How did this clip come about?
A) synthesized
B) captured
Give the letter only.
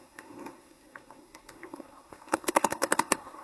A